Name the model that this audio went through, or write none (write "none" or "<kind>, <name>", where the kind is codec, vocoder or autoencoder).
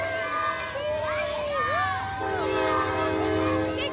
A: none